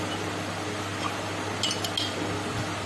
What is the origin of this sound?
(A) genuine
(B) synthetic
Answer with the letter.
A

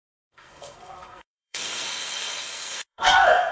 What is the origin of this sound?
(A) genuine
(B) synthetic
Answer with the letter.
B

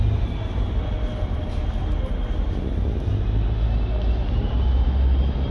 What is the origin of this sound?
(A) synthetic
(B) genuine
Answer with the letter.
B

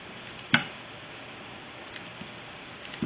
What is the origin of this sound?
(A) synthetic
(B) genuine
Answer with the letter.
B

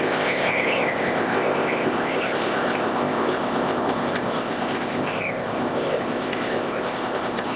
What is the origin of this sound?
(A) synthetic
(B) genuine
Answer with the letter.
A